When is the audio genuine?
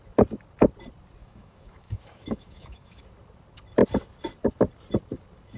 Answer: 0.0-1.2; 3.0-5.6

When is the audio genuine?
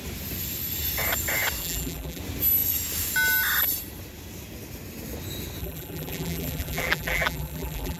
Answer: 0.0-1.6; 2.2-5.6